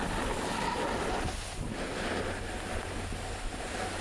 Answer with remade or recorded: recorded